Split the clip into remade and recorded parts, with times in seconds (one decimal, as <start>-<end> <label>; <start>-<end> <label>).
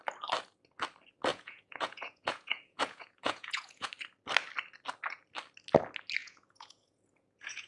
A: 0.0-1.3 recorded; 1.3-3.9 remade; 3.9-6.2 recorded; 6.2-7.7 remade